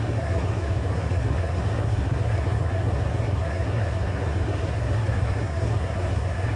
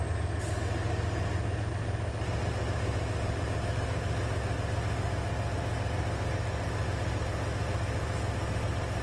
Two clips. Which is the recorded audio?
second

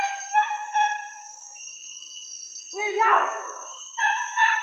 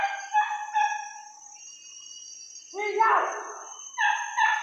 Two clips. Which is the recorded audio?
second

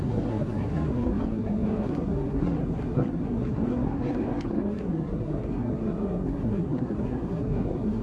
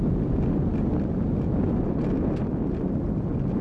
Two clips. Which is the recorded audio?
second